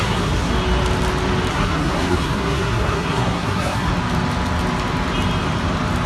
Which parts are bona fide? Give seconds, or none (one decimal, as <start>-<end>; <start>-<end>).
0.5-1.5; 3.9-6.1